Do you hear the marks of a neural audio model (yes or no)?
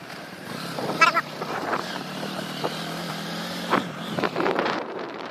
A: yes